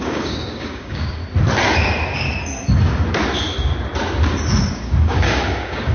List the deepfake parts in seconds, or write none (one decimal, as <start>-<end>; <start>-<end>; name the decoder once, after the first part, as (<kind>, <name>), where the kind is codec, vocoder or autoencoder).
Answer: 0.0-1.2 (codec, DAC); 4.7-5.9